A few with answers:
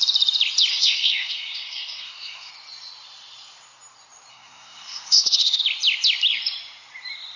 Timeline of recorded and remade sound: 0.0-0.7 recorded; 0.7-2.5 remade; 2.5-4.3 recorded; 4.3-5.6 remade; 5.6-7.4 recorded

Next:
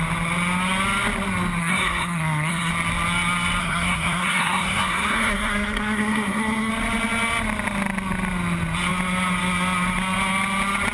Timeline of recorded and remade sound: 0.0-1.6 recorded; 1.6-2.7 remade; 2.7-3.6 recorded; 3.6-6.7 remade; 6.7-10.9 recorded

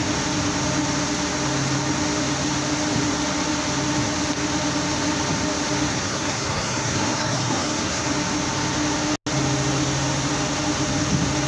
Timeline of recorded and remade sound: 0.0-5.9 recorded; 5.9-8.1 remade; 8.1-11.5 recorded

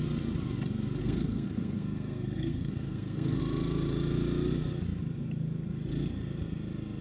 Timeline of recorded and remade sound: 0.0-1.0 recorded; 1.0-3.4 remade; 3.4-7.0 recorded

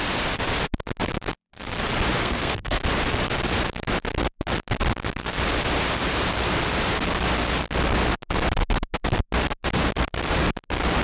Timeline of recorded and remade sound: 0.0-2.2 recorded; 2.2-2.8 remade; 2.8-11.0 recorded

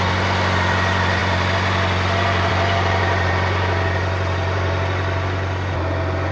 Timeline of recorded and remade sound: 0.0-6.3 recorded

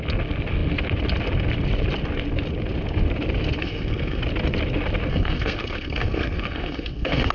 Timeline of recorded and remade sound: 0.0-3.6 recorded; 3.6-4.2 remade; 4.2-5.1 recorded; 5.1-7.3 remade

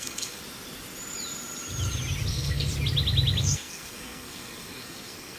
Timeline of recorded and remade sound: 0.0-0.4 remade; 0.4-2.3 recorded; 2.3-2.7 remade; 2.7-3.4 recorded; 3.4-5.4 remade